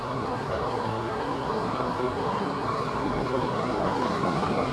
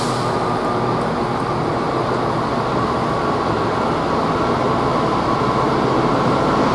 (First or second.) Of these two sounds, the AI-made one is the first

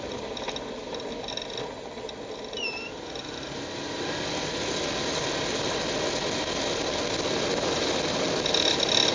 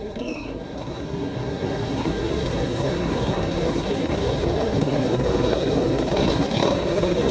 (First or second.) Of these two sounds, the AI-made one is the second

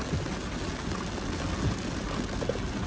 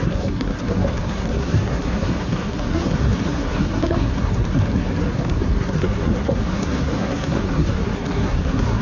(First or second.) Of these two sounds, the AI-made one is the second